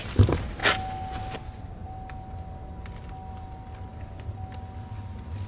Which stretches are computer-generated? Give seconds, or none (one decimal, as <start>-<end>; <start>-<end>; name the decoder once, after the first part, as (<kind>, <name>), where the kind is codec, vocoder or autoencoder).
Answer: none